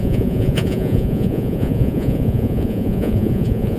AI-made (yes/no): yes